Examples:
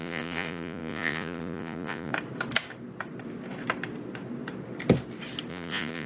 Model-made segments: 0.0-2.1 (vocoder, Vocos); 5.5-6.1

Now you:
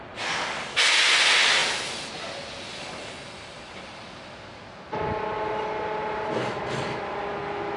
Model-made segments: none

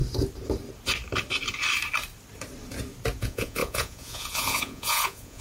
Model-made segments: 3.2-5.4 (vocoder, Vocos)

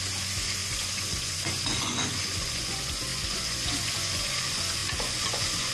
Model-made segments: 0.0-5.7 (vocoder, Vocos)

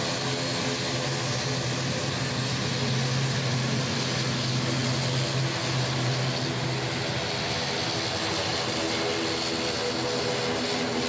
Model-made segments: none

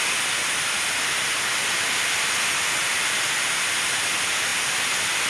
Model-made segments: none